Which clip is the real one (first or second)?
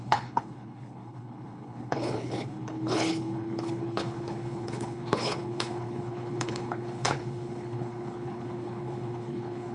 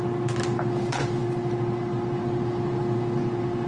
second